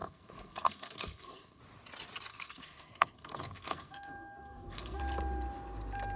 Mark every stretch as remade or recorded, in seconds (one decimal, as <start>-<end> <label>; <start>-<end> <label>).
0.0-1.6 remade; 1.6-2.3 recorded; 2.3-5.0 remade; 5.0-6.2 recorded